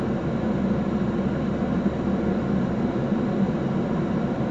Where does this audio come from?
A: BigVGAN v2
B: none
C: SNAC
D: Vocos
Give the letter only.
B